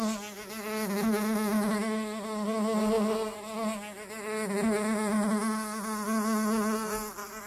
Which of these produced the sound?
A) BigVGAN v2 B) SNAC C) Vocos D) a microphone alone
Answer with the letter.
D